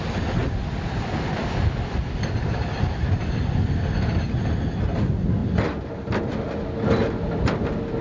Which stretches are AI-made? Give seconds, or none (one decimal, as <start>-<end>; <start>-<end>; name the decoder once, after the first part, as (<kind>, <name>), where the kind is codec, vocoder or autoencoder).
none